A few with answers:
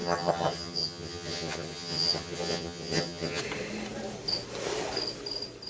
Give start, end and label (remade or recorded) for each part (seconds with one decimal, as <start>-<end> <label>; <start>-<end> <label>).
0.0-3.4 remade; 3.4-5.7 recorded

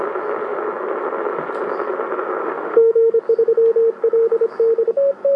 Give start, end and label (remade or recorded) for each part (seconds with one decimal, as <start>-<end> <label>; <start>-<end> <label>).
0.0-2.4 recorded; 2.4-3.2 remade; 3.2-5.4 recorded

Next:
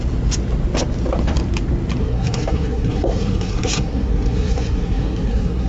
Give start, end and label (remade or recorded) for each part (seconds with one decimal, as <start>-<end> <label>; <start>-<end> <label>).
0.0-2.0 recorded; 2.0-5.7 remade